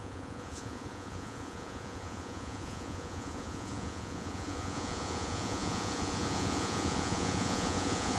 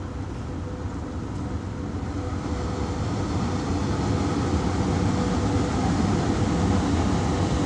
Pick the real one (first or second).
second